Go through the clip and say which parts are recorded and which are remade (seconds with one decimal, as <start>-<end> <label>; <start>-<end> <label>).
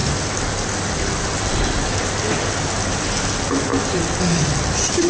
0.0-5.1 recorded